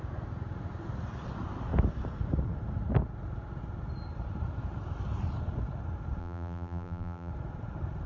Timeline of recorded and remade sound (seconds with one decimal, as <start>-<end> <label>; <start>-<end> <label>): 0.0-6.2 recorded; 6.2-7.3 remade; 7.3-8.1 recorded